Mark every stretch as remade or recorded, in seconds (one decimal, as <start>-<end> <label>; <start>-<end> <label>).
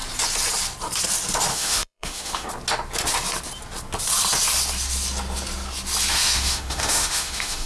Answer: 0.0-1.5 recorded; 1.5-2.5 remade; 2.5-6.1 recorded; 6.1-7.7 remade